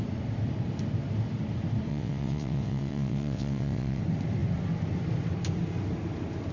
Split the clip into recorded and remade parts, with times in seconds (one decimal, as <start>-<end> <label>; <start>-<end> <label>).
0.0-1.9 recorded; 1.9-4.0 remade; 4.0-6.5 recorded